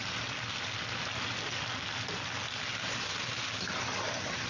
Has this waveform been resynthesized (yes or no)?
no